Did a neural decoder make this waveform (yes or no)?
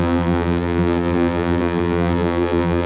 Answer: yes